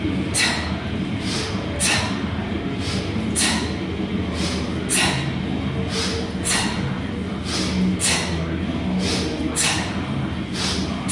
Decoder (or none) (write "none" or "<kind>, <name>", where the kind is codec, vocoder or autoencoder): none